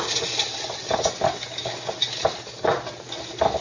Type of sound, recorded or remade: recorded